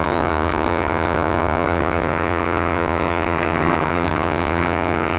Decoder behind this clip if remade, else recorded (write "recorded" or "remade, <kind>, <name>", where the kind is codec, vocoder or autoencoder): remade, vocoder, HiFi-GAN